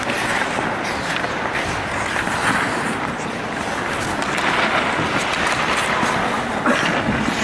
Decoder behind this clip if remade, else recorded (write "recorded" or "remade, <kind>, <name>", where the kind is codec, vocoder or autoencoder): recorded